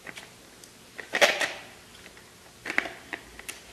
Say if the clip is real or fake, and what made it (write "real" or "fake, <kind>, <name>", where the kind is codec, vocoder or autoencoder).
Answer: real